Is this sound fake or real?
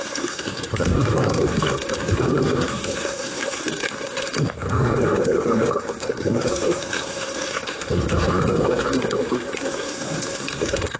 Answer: fake